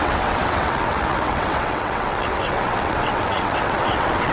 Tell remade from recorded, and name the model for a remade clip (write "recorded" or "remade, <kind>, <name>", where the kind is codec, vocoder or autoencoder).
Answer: remade, vocoder, WaveNeXt